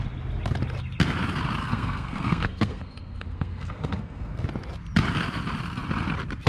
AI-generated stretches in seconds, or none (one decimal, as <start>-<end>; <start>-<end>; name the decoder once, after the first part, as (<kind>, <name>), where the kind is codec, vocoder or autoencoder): 1.6-4.4 (codec, SNAC)